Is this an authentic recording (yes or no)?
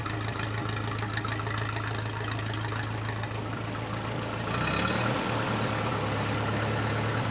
yes